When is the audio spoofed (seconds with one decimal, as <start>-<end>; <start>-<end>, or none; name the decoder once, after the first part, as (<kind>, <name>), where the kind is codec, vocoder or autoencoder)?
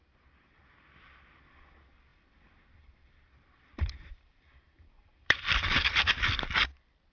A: 2.1-6.4 (vocoder, BigVGAN v2)